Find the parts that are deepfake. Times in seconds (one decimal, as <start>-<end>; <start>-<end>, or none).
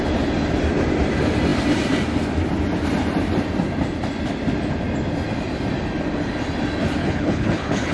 7.0-7.9